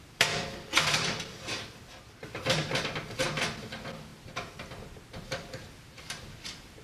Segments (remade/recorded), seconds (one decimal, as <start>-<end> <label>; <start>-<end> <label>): 0.0-4.1 remade; 4.1-5.2 recorded; 5.2-6.8 remade